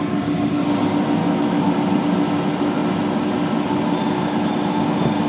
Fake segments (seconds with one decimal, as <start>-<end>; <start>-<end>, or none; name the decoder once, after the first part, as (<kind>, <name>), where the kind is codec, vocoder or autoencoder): 1.2-1.7 (autoencoder, DAC-VAE)

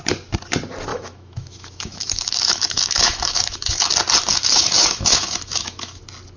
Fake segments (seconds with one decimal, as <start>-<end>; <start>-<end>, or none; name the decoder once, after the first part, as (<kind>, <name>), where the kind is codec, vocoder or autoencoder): 0.9-3.9 (autoencoder, DAC-VAE); 4.3-6.0

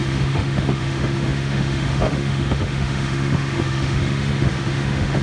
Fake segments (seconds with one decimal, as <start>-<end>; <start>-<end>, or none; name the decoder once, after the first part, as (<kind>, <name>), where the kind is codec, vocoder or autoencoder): 0.0-5.2 (autoencoder, DAC-VAE)

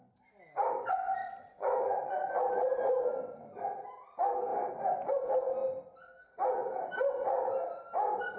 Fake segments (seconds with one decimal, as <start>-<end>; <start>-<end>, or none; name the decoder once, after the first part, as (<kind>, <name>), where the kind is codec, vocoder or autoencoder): 1.2-2.3 (vocoder, Vocos)

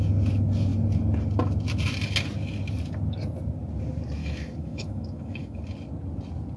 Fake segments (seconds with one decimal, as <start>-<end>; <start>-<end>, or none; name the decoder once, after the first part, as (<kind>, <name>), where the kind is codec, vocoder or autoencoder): 4.2-5.6 (autoencoder, DAC-VAE)

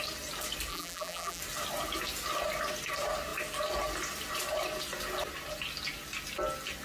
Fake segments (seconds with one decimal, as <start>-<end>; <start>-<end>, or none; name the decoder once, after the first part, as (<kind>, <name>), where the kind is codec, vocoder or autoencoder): 0.7-1.4 (vocoder, BigVGAN v2)